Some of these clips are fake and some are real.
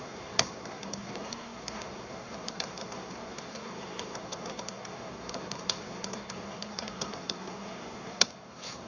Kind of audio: fake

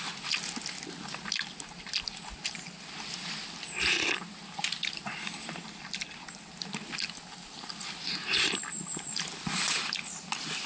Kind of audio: real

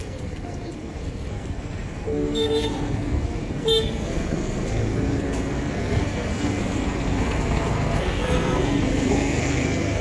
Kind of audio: fake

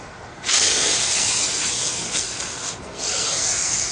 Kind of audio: fake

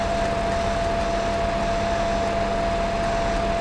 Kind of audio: real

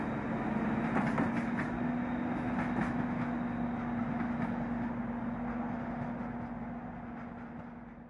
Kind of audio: real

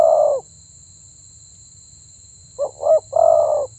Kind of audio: real